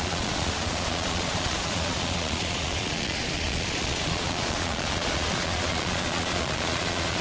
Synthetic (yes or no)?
yes